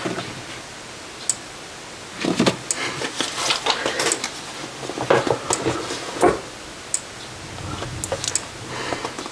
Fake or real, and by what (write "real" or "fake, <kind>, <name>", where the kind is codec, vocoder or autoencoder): real